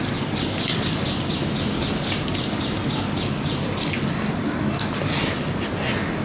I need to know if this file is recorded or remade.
recorded